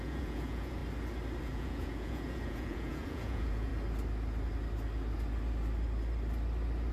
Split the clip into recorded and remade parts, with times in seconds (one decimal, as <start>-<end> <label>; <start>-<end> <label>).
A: 0.0-0.8 remade; 0.8-1.4 recorded; 1.4-3.7 remade; 3.7-6.9 recorded